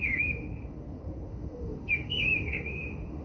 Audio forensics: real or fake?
fake